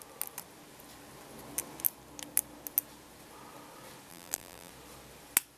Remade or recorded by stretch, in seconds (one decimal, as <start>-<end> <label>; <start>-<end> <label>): 0.0-4.1 recorded; 4.1-4.7 remade; 4.7-5.6 recorded